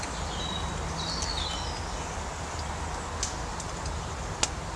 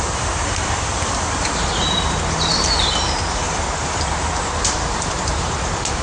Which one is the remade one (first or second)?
second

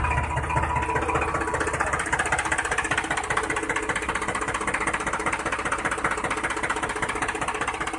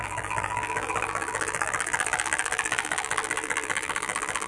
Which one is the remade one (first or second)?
second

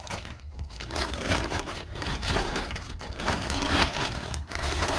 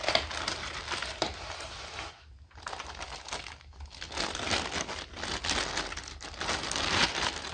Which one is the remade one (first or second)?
first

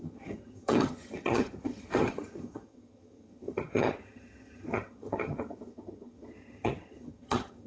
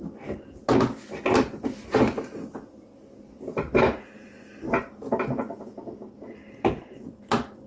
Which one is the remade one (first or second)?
first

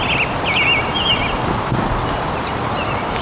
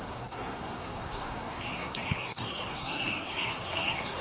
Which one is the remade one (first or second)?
second